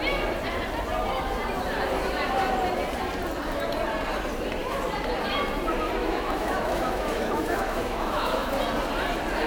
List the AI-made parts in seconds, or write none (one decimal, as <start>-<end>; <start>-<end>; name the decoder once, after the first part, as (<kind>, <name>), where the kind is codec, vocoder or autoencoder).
6.0-8.5 (autoencoder, DAC-VAE)